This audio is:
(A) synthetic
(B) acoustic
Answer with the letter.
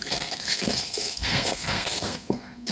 A